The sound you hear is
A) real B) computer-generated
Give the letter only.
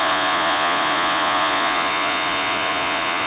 B